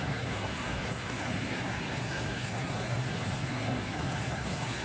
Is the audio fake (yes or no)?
yes